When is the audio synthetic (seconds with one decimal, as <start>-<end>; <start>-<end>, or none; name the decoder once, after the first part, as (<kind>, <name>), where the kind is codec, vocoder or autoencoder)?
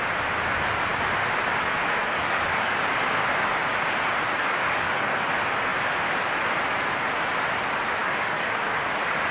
2.0-2.8 (codec, DAC); 4.4-5.3; 8.0-8.6